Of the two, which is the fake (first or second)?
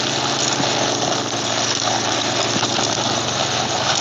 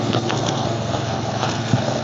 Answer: second